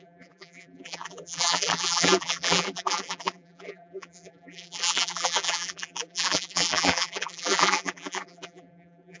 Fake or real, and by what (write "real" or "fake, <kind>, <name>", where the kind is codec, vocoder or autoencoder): fake, vocoder, BigVGAN v2